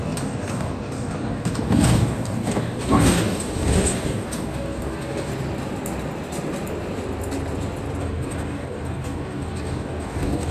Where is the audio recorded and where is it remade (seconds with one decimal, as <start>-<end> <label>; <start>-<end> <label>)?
0.0-5.3 remade; 5.3-8.0 recorded; 8.0-10.5 remade